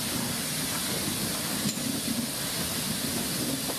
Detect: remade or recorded recorded